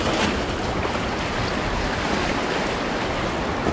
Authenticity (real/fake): real